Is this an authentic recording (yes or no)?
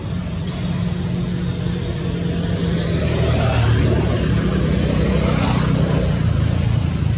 yes